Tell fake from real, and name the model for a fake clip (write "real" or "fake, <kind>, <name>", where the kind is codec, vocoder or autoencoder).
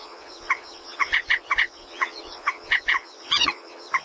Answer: fake, vocoder, Vocos